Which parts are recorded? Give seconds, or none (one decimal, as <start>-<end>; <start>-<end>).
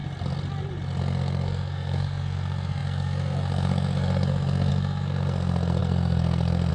0.0-1.0